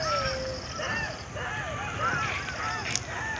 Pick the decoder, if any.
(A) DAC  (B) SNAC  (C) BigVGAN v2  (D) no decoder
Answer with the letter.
D